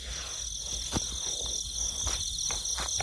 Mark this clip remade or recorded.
recorded